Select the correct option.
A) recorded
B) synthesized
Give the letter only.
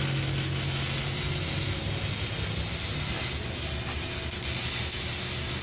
A